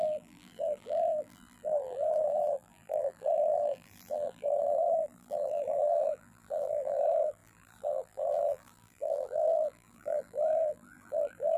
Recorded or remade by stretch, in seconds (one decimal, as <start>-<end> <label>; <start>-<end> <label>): 0.0-11.6 remade